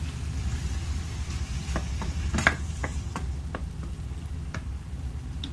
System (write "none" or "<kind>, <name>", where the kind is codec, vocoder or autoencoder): none